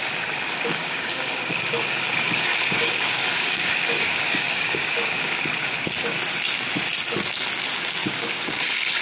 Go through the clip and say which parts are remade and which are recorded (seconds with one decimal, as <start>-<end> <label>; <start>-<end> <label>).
0.0-0.8 recorded; 0.8-5.9 remade; 5.9-8.0 recorded; 8.0-8.6 remade; 8.6-9.0 recorded